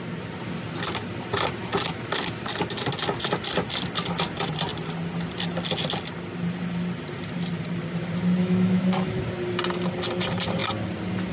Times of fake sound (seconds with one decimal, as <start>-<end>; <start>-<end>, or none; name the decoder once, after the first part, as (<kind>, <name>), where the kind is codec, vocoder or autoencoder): 8.4-9.2 (autoencoder, DAC-VAE)